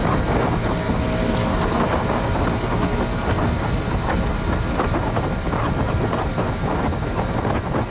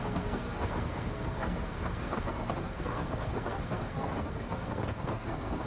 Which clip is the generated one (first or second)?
second